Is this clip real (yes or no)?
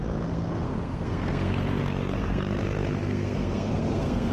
no